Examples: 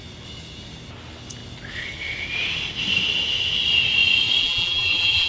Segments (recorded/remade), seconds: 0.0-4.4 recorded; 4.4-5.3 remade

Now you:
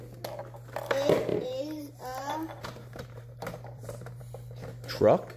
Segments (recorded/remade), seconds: 0.0-1.3 recorded; 1.3-4.2 remade; 4.2-5.4 recorded

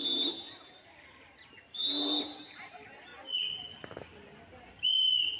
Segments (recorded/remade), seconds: 0.0-3.1 remade; 3.1-4.7 recorded; 4.7-5.4 remade